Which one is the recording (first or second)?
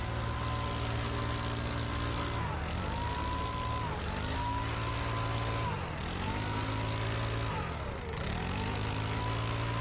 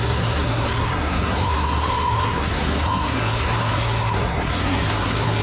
first